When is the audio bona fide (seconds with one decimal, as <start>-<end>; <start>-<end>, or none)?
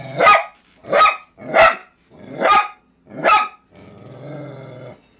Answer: 0.0-0.8; 1.4-1.8; 2.8-3.2; 3.9-5.2